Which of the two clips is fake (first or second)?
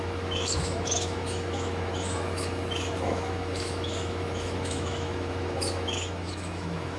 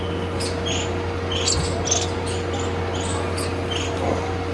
first